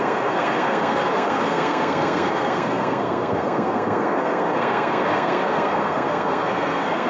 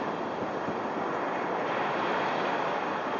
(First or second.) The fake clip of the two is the first